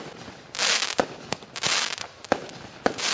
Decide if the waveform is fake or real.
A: real